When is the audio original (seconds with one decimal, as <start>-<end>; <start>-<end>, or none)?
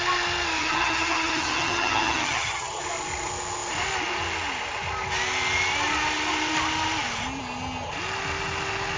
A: 0.0-0.6; 2.8-9.0